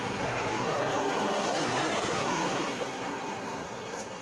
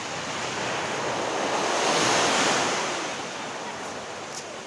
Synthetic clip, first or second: first